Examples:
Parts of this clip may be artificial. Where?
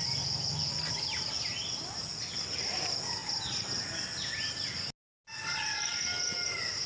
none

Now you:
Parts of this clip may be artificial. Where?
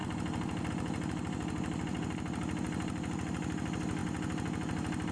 none